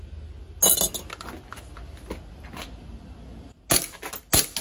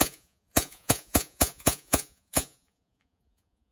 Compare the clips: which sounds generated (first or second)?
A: second